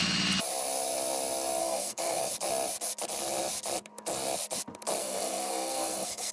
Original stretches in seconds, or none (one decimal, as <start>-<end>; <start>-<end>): 0.0-1.6; 2.3-5.0